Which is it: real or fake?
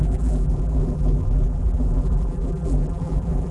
fake